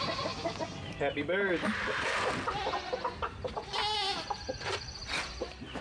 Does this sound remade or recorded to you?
recorded